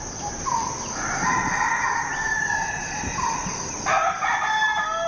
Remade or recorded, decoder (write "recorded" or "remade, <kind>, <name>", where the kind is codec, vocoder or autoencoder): recorded